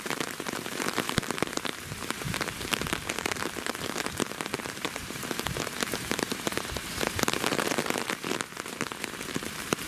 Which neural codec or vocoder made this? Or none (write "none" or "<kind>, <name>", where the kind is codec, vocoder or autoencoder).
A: vocoder, BigVGAN v2